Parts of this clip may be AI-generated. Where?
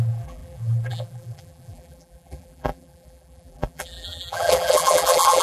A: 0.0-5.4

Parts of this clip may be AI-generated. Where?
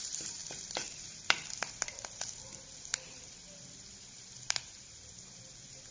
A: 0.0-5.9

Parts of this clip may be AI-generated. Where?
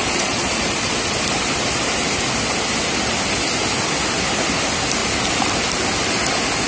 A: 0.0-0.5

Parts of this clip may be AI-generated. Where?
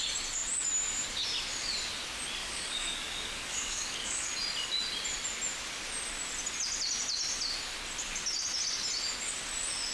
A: 2.4-4.3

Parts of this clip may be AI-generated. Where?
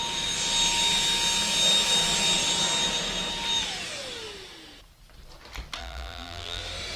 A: 5.8-6.6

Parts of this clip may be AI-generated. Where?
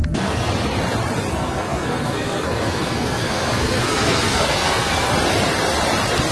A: 0.0-0.5; 1.3-5.1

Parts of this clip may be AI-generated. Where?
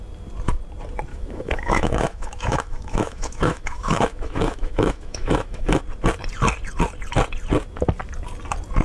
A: 1.1-5.8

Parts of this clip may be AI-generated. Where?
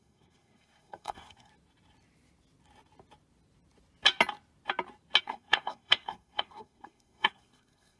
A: 0.0-1.5; 5.2-8.0